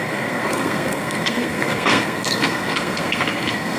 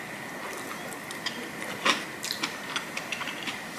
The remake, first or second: first